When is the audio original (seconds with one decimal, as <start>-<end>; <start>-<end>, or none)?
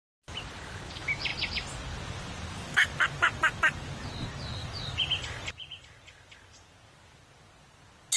0.0-8.2